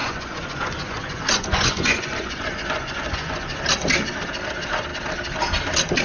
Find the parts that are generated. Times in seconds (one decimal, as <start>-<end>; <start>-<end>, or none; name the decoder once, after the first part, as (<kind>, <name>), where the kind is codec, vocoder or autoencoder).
0.0-3.6 (vocoder, Vocos)